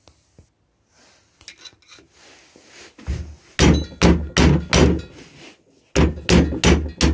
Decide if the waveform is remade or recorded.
recorded